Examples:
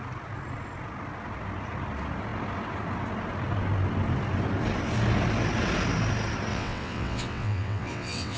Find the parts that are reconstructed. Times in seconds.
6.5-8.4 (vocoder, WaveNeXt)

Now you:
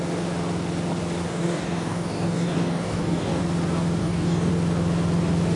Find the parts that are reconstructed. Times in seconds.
1.3-3.4 (codec, DAC); 4.0-4.5

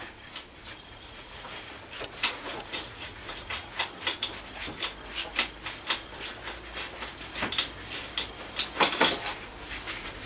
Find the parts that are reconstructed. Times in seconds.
0.6-3.8 (vocoder, Vocos)

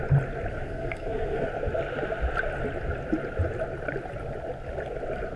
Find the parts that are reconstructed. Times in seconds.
0.5-1.5 (codec, SNAC)

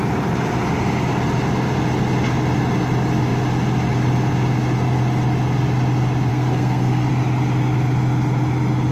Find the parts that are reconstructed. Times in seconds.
6.3-7.1 (codec, SNAC)

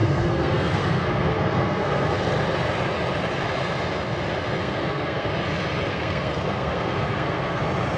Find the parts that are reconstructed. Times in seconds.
0.0-2.2 (codec, SNAC); 4.6-5.3; 5.9-7.6

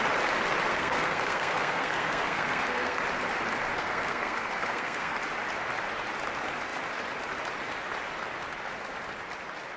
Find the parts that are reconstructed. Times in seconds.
0.7-3.0 (codec, SNAC); 3.8-5.2

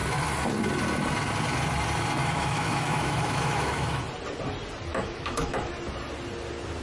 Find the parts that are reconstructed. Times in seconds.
2.2-4.0 (autoencoder, DAC-VAE); 4.9-5.7